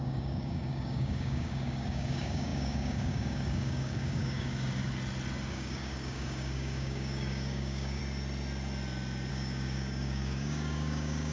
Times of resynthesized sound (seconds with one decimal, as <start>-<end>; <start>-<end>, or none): 0.0-4.8; 5.5-8.0; 9.3-11.3